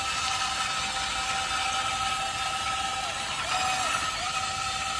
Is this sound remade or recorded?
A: recorded